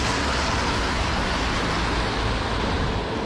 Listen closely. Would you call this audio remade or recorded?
recorded